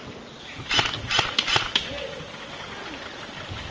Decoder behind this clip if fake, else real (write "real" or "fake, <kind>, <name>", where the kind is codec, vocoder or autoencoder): fake, vocoder, BigVGAN v2